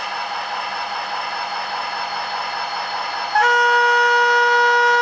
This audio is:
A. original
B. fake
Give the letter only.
A